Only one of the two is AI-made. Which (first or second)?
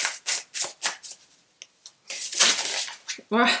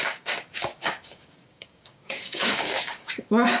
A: second